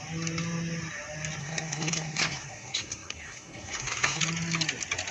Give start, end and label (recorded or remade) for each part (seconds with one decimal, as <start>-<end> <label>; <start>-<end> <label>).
0.0-1.4 recorded; 1.4-4.2 remade; 4.2-5.1 recorded